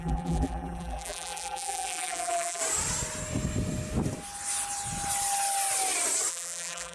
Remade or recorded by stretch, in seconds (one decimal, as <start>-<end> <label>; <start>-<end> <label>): 0.0-2.6 remade; 2.6-6.3 recorded; 6.3-6.9 remade